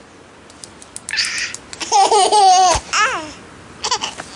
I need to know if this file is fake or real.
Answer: real